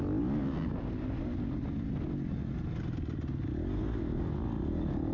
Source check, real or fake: real